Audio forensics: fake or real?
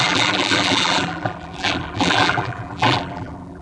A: fake